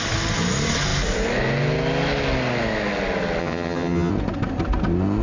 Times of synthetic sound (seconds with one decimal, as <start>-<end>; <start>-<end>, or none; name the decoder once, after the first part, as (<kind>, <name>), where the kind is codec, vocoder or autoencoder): 3.4-4.1 (vocoder, HiFi-GAN)